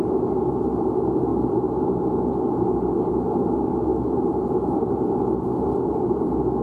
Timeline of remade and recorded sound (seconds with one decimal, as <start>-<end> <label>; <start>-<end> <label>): 0.0-6.6 recorded